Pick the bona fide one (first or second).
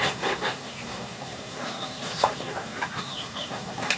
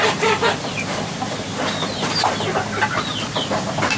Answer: second